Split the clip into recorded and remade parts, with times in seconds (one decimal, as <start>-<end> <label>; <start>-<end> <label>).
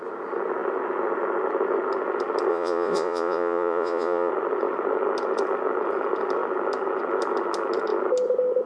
0.0-2.5 recorded; 2.5-4.3 remade; 4.3-8.7 recorded